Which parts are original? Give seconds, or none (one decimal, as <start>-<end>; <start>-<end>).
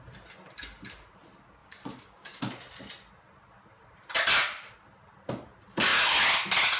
0.0-1.6; 2.4-6.8